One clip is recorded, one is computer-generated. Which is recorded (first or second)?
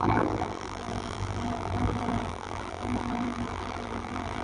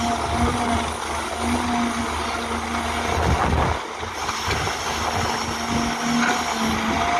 second